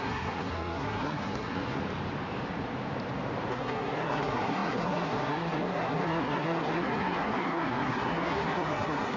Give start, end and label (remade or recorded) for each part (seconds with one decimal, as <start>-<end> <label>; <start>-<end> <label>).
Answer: 0.0-1.8 remade; 1.8-3.5 recorded; 3.5-9.2 remade